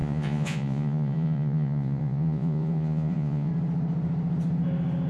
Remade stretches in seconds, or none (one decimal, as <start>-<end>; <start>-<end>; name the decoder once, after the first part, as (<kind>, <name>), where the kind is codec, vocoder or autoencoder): 0.0-3.5 (vocoder, Vocos)